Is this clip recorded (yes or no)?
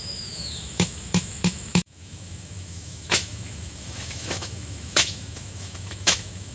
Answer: no